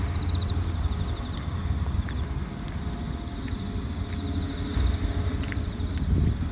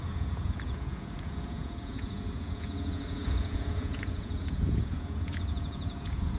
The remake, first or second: second